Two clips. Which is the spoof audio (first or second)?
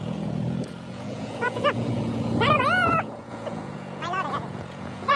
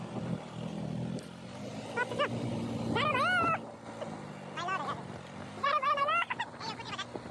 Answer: first